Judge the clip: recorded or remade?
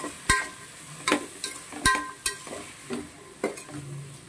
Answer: recorded